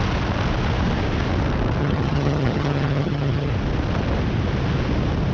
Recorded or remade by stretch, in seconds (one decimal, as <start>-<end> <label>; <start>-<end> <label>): 0.0-1.8 recorded; 1.8-3.5 remade; 3.5-5.3 recorded